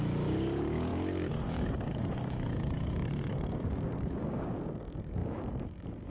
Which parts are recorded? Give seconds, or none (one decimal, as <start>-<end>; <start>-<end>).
none